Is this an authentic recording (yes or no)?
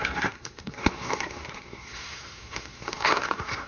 no